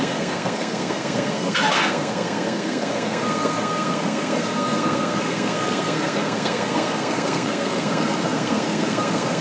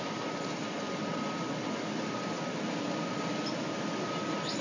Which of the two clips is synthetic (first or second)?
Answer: first